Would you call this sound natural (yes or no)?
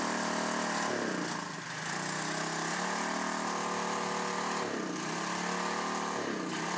yes